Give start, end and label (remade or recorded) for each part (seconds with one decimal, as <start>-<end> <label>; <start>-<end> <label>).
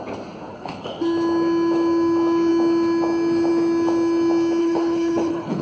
0.0-0.5 recorded; 0.5-1.0 remade; 1.0-4.6 recorded; 4.6-5.6 remade